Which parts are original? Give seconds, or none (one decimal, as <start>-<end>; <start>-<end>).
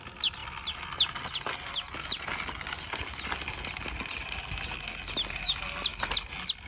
0.0-6.7